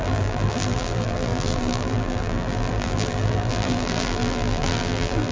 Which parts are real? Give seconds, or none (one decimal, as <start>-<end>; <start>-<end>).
none